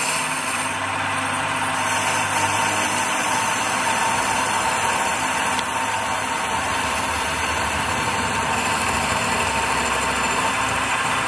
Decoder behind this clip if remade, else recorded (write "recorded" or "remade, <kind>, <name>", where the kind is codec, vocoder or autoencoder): recorded